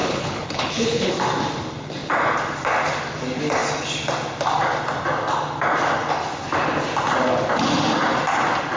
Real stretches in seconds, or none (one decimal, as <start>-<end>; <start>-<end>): 1.1-8.8